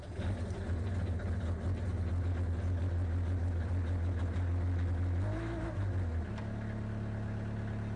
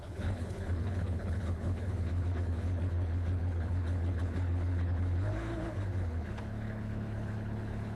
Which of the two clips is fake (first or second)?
second